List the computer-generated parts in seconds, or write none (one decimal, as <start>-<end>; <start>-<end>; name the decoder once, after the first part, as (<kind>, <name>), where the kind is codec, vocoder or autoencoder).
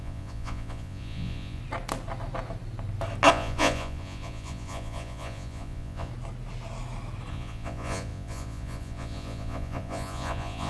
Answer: 0.0-1.6 (vocoder, Vocos); 3.3-6.1; 7.3-10.7